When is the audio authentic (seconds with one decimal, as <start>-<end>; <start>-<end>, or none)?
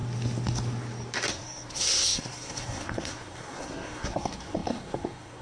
0.0-1.3